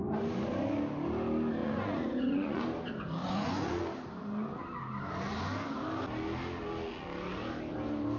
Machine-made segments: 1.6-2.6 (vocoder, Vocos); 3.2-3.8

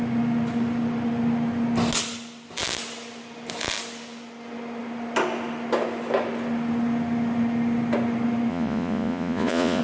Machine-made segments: 8.5-9.8 (vocoder, Vocos)

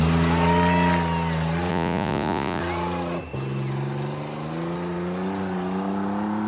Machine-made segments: 1.7-2.6 (vocoder, Vocos)

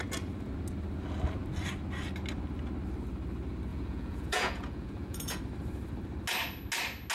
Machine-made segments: 3.7-5.4 (vocoder, Vocos)

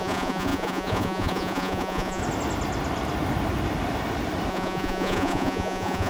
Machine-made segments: 0.0-2.2 (vocoder, Vocos); 4.5-6.1